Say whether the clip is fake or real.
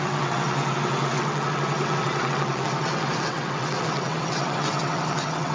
fake